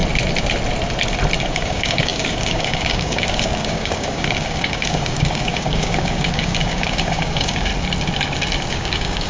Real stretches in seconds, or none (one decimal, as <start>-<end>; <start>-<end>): 0.0-1.5; 7.7-8.7